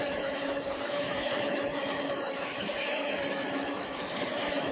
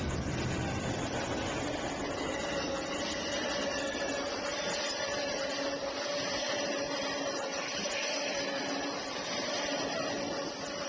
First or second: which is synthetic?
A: first